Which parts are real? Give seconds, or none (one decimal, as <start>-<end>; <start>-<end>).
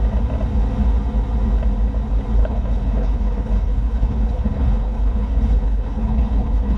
0.0-2.4